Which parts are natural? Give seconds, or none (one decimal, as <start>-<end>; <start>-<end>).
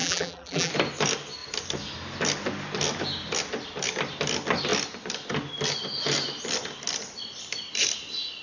0.7-8.4